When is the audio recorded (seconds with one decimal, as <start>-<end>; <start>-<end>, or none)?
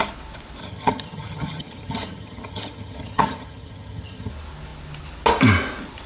0.0-0.6; 4.3-6.1